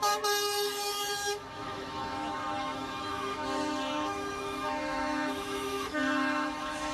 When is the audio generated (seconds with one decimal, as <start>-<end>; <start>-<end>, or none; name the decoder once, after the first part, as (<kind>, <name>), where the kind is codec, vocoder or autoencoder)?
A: 0.0-6.9 (autoencoder, DAC-VAE)